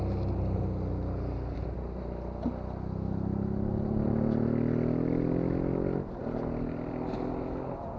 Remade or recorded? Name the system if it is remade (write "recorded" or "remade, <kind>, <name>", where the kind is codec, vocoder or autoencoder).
recorded